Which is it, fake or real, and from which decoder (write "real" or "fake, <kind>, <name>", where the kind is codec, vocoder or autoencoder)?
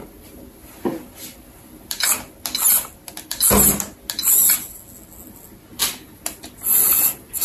real